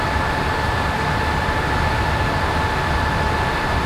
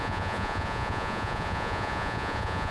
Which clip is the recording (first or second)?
first